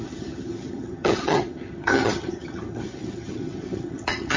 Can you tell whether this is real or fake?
fake